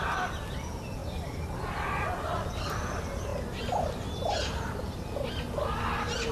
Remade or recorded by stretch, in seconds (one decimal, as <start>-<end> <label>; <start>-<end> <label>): 0.0-6.3 recorded

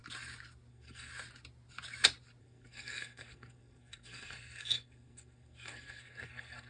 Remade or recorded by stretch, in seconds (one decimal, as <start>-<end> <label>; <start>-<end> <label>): 0.0-0.7 recorded; 0.7-1.1 remade; 1.1-2.4 recorded; 2.4-6.7 remade

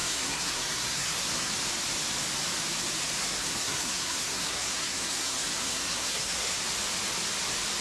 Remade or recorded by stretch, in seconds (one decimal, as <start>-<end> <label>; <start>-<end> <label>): 0.0-1.5 remade; 1.5-3.2 recorded; 3.2-6.7 remade; 6.7-7.8 recorded